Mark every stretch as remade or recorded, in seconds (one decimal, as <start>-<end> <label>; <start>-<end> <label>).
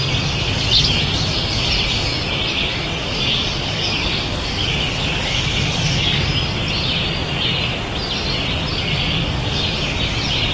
0.0-3.0 recorded; 3.0-6.3 remade; 6.3-8.7 recorded; 8.7-9.6 remade; 9.6-10.5 recorded